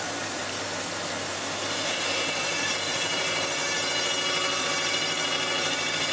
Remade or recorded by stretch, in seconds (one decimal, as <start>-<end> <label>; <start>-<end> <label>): 0.0-0.4 remade; 0.4-1.3 recorded; 1.3-3.6 remade; 3.6-4.6 recorded; 4.6-6.1 remade